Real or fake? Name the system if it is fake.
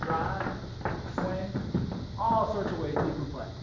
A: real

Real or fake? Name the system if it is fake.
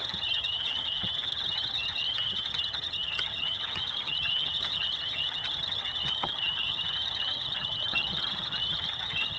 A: fake, vocoder, HiFi-GAN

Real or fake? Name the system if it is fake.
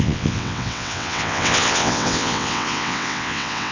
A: fake, vocoder, WaveNeXt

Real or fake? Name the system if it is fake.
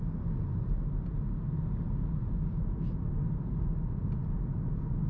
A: real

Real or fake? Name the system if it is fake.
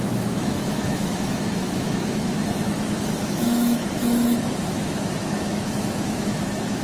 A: fake, autoencoder, DAC-VAE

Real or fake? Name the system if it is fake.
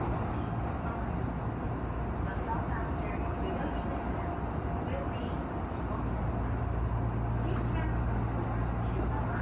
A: real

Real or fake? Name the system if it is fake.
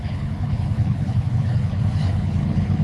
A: fake, codec, HILCodec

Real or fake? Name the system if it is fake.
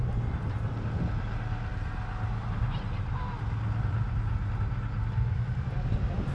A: real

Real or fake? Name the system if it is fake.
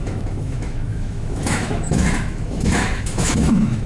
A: fake, autoencoder, DAC-VAE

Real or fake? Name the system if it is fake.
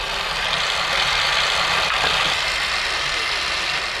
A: real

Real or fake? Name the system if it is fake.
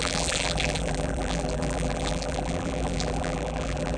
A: fake, vocoder, BigVGAN v2